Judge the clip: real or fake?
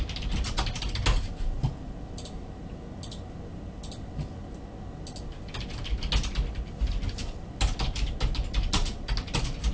real